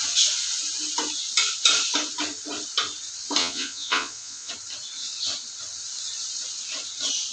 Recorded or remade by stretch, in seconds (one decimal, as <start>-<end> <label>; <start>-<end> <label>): 0.0-3.4 recorded; 3.4-4.5 remade; 4.5-7.3 recorded